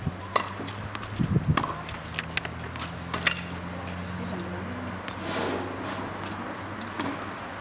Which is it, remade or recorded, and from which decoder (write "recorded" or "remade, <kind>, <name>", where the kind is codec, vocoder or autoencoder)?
recorded